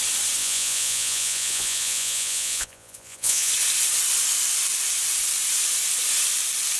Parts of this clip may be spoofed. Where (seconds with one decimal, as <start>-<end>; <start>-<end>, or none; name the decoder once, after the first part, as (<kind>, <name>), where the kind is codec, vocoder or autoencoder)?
0.4-3.5 (vocoder, Vocos)